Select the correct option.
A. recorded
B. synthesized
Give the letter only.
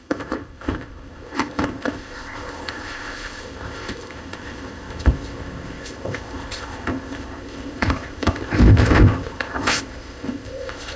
B